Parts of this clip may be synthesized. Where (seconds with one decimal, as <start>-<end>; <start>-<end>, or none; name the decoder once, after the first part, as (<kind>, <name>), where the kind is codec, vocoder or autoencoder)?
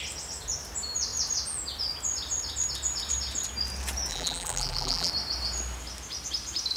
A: 4.1-5.1 (vocoder, BigVGAN v2)